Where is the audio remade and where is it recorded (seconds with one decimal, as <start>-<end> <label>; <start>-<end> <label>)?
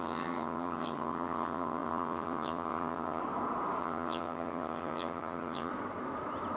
0.0-3.2 remade; 3.2-3.8 recorded; 3.8-5.7 remade; 5.7-6.6 recorded